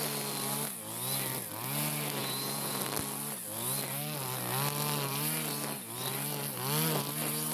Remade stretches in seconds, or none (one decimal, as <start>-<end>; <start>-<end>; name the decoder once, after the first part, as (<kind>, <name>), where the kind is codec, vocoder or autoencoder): 2.2-2.8 (vocoder, Vocos)